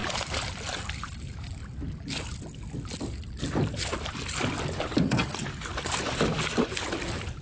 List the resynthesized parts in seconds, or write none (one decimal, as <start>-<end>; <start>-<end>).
none